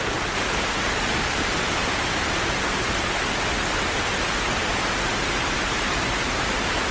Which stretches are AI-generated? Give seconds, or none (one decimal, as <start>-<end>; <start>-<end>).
none

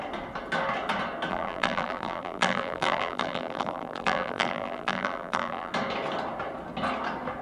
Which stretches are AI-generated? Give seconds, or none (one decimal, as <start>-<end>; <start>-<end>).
1.3-5.7

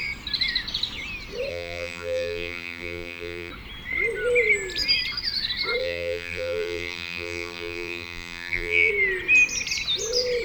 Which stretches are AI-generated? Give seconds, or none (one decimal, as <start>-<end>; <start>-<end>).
1.5-3.5; 5.8-8.9